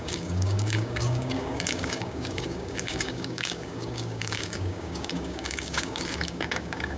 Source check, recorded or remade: remade